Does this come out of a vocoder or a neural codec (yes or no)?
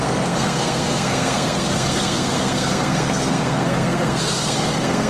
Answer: yes